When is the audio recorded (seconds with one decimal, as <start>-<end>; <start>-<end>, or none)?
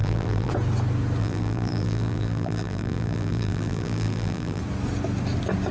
0.5-1.2; 4.6-5.7